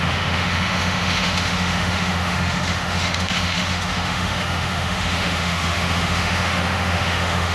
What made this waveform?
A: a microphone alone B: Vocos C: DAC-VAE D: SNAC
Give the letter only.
C